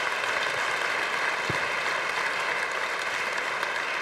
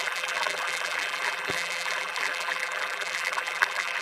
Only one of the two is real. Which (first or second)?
first